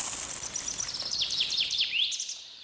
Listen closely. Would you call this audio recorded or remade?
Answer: recorded